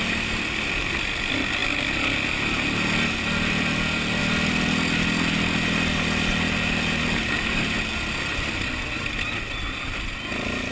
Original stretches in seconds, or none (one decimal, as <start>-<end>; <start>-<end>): 0.0-10.7